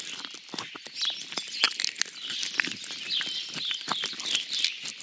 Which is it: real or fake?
real